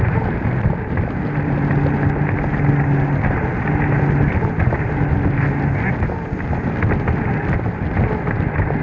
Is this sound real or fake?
real